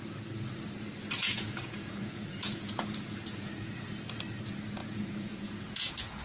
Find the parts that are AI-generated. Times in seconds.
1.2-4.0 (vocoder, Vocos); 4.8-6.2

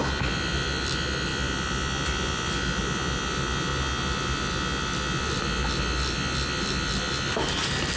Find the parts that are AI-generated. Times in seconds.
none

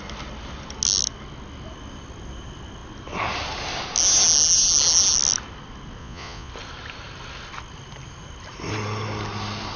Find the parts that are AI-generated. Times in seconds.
6.0-6.5 (vocoder, Vocos)